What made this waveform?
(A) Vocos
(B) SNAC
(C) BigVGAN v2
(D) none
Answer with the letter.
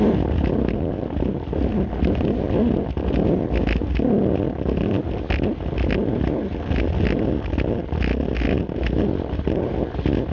D